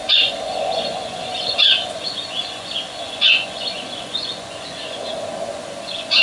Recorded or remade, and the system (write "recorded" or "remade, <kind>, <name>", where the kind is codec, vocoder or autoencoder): remade, vocoder, Vocos